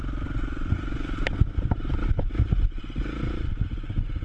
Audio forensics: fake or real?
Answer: real